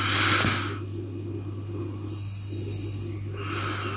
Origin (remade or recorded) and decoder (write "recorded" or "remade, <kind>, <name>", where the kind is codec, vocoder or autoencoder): recorded